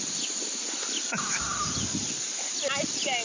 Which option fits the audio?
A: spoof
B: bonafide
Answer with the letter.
B